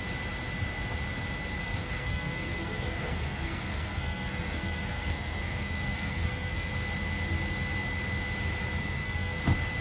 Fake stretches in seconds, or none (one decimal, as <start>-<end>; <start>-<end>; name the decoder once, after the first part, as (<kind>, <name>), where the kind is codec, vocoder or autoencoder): 1.6-6.7 (codec, SNAC); 8.8-9.4